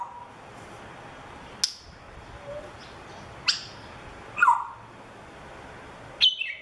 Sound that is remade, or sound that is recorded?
recorded